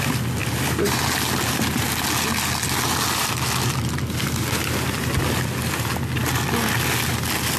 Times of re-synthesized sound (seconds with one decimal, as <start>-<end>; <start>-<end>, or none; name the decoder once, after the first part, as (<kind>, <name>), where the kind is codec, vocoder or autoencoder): none